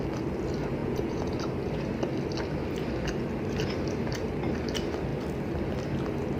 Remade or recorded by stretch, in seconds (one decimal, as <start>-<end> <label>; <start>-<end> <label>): 0.0-0.8 recorded; 0.8-1.4 remade; 1.4-6.4 recorded